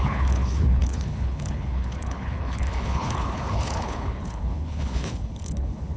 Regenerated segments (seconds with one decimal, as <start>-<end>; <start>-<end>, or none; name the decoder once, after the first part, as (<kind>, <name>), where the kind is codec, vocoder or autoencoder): 0.0-6.0 (codec, HILCodec)